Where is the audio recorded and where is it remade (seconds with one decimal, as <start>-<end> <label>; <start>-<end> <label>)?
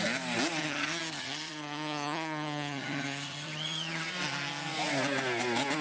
0.0-0.6 recorded; 0.6-4.1 remade; 4.1-5.8 recorded